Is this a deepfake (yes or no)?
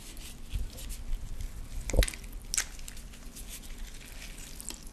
no